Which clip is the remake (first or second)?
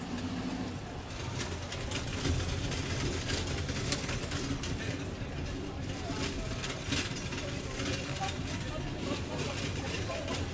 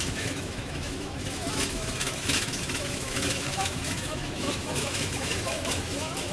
second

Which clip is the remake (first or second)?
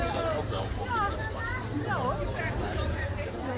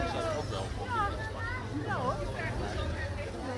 first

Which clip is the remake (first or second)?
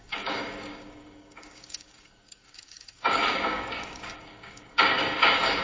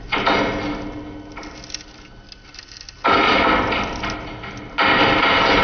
first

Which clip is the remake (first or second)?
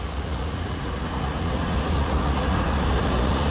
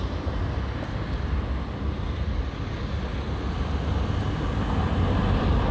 first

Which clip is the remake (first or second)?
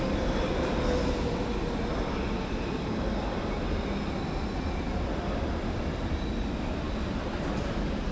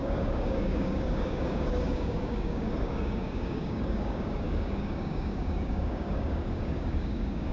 second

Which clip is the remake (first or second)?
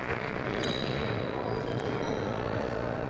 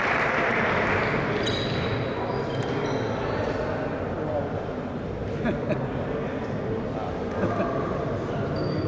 first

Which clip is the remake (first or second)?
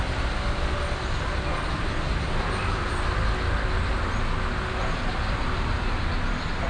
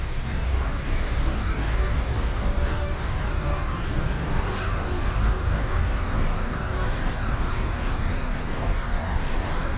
second